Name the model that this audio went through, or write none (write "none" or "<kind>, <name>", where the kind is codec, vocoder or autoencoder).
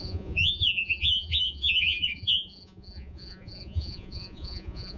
vocoder, Vocos